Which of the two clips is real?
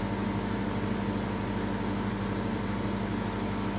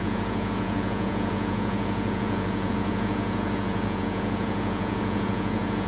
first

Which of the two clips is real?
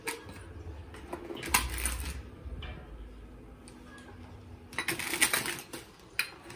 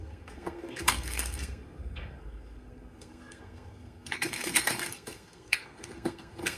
first